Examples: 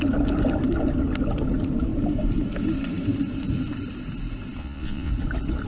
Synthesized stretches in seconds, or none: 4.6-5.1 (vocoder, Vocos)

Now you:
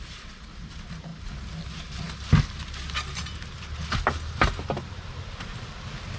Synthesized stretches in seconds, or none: 0.0-1.1 (vocoder, BigVGAN v2); 4.8-6.2